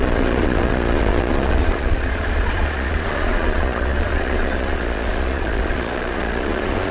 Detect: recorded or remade remade